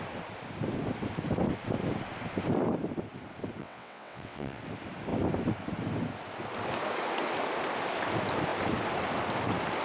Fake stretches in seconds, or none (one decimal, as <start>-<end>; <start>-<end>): 3.6-4.6

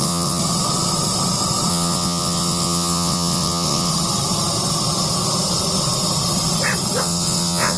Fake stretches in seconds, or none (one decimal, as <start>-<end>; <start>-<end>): 0.0-0.4; 1.7-3.9; 7.0-7.8